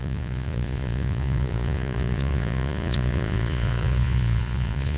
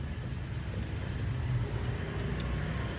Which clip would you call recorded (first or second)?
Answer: second